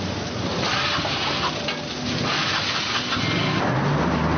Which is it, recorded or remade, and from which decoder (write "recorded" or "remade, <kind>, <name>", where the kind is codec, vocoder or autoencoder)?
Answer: recorded